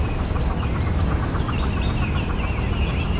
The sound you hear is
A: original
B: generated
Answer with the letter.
A